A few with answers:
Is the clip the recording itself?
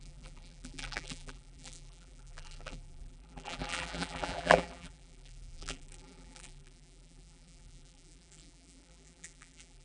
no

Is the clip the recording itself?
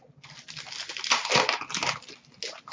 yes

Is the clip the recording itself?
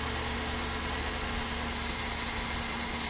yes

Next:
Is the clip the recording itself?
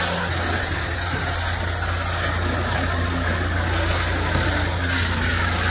yes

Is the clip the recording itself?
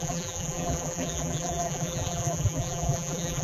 no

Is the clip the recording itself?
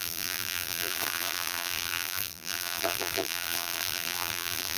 no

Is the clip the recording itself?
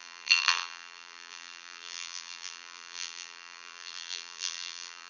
no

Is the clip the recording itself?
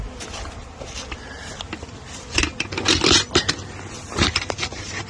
yes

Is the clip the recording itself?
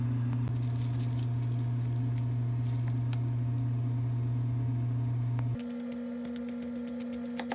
yes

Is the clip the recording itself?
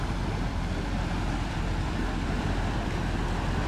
no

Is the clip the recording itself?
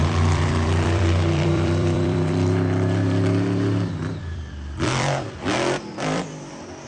no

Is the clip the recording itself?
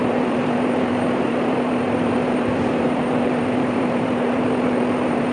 no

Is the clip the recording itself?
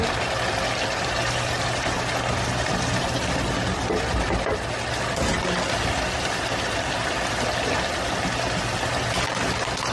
yes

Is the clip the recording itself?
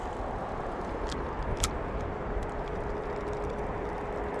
yes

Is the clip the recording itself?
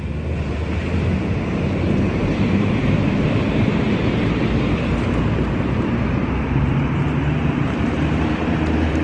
no